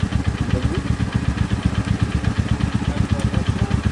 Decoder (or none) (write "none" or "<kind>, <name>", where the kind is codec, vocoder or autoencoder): none